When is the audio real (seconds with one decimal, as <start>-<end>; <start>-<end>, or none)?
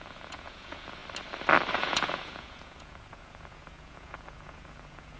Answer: 1.0-1.7